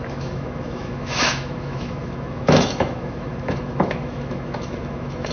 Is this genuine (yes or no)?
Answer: no